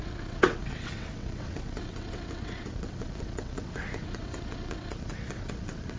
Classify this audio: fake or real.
fake